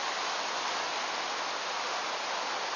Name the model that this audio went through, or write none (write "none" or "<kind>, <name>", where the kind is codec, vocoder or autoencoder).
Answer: none